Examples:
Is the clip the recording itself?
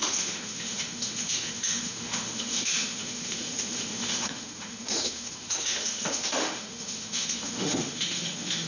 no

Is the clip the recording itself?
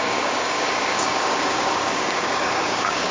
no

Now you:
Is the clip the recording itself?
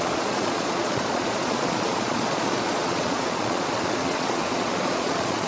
no